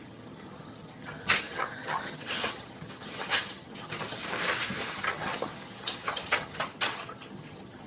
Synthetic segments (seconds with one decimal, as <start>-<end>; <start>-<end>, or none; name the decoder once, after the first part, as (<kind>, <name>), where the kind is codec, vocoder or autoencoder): 0.0-4.2 (vocoder, HiFi-GAN); 4.9-7.9